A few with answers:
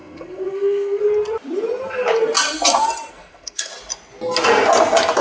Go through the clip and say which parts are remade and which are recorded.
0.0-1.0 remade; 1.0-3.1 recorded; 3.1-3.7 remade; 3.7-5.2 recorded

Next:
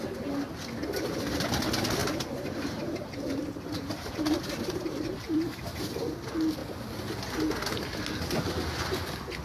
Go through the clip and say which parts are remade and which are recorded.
0.0-2.0 recorded; 2.0-6.0 remade; 6.0-9.4 recorded